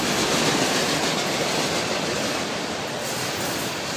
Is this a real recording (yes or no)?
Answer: yes